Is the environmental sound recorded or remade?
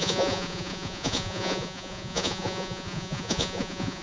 remade